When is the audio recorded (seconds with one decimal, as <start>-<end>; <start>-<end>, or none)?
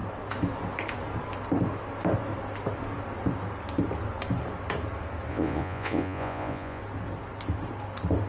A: 0.0-5.3; 6.8-8.3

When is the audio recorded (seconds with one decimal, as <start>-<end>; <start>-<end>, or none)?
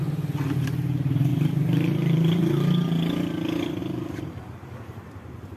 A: 0.0-1.3; 2.4-3.8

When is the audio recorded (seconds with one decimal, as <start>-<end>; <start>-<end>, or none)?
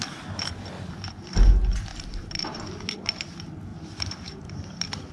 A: 0.0-1.9; 2.6-3.7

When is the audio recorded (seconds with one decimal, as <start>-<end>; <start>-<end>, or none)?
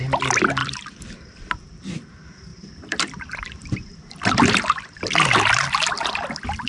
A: 0.0-0.6; 2.1-2.5; 5.5-6.7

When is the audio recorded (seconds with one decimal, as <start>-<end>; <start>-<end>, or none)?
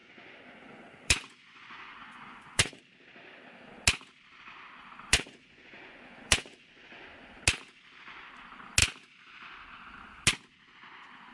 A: 2.8-5.1; 7.4-11.3